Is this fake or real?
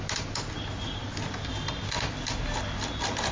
real